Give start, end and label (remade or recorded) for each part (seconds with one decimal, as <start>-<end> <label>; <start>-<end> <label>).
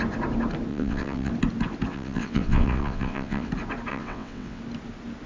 0.0-0.7 recorded; 0.7-1.3 remade; 1.3-1.9 recorded; 1.9-3.5 remade; 3.5-3.9 recorded; 3.9-4.6 remade; 4.6-5.3 recorded